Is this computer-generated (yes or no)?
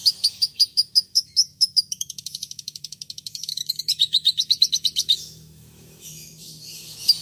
yes